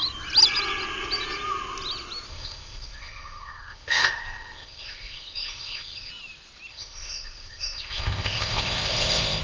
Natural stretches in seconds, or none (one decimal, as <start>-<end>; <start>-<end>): 0.0-2.3; 6.1-6.7